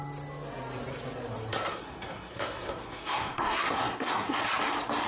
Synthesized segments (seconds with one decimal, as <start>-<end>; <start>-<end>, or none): 1.5-4.4